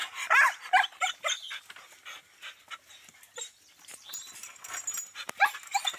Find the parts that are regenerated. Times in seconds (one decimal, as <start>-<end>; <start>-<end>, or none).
none